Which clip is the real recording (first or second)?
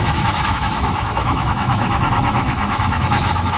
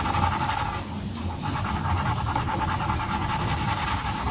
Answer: second